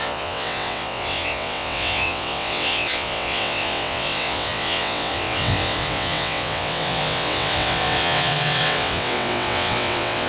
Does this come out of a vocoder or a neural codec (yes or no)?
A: yes